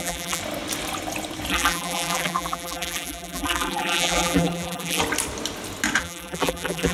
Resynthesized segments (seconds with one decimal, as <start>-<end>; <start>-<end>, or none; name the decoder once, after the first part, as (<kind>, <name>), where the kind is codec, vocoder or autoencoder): 0.0-0.4 (vocoder, BigVGAN v2); 1.5-5.0; 6.0-6.9